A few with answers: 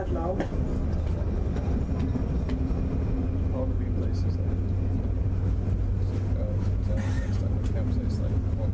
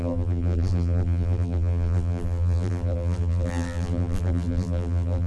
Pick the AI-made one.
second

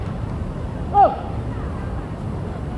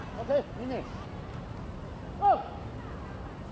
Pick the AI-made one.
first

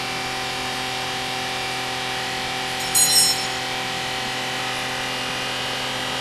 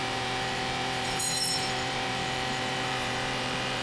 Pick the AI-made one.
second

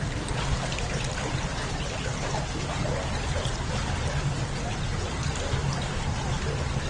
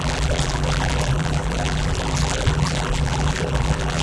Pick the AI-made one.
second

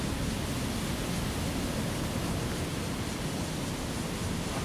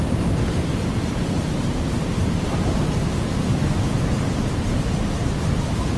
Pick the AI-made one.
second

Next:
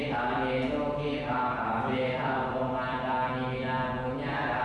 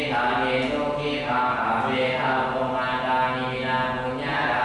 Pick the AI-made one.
first